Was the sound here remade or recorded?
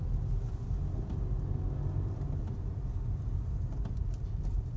recorded